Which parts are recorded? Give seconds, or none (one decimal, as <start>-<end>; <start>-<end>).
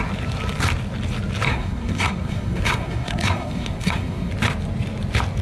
0.0-1.5; 4.3-5.4